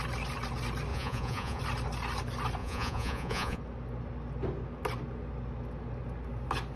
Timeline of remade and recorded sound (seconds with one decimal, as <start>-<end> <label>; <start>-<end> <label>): 0.0-0.9 recorded; 0.9-1.6 remade; 1.6-2.6 recorded; 2.6-3.6 remade; 3.6-6.8 recorded